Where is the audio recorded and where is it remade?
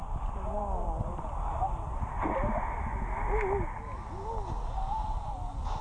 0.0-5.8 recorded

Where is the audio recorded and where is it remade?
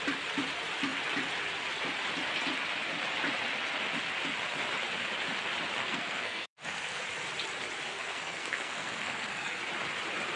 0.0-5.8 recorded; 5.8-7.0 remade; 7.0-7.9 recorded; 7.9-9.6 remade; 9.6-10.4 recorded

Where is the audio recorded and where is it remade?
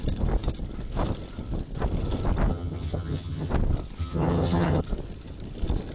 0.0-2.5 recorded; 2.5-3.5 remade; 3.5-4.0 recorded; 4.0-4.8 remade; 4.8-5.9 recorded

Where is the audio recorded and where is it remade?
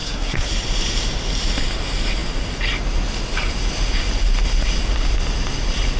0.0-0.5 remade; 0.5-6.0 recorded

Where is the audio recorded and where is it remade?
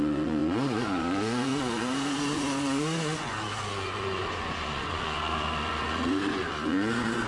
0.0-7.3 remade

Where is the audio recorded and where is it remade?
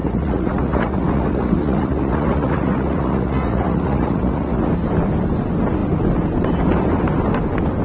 0.0-4.7 remade; 4.7-7.8 recorded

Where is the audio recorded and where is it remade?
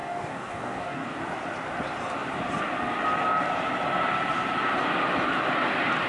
0.0-1.2 remade; 1.2-6.1 recorded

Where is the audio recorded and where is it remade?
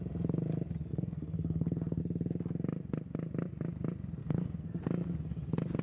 0.0-0.9 recorded; 0.9-2.0 remade; 2.0-4.2 recorded; 4.2-4.8 remade; 4.8-5.8 recorded